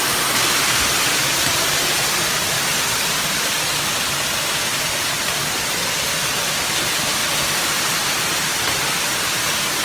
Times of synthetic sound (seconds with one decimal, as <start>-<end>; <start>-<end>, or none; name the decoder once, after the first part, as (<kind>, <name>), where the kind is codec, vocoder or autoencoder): 7.2-9.0 (vocoder, BigVGAN v2)